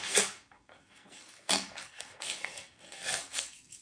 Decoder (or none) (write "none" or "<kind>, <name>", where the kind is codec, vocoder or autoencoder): codec, SNAC